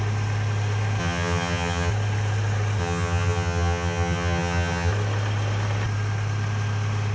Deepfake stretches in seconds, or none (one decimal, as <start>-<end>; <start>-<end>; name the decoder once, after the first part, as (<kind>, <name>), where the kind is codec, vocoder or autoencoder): 1.0-1.9 (vocoder, HiFi-GAN); 2.8-4.9